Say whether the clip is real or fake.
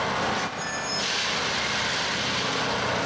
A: real